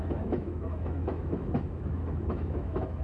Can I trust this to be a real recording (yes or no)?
no